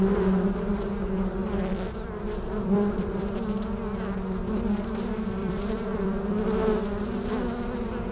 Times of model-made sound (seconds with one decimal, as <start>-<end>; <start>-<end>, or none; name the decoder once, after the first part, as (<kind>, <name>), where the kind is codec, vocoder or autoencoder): 1.4-3.2 (vocoder, BigVGAN v2); 5.4-6.3